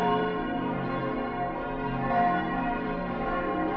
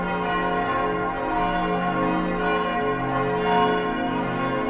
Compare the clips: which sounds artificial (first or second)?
first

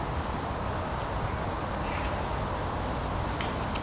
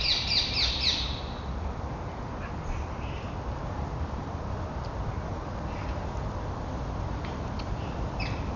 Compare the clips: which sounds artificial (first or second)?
second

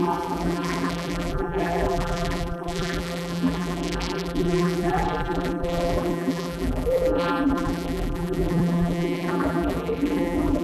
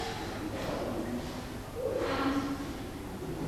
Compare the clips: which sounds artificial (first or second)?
first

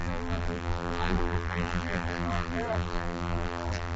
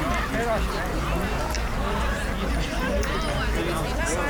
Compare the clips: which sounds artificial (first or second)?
first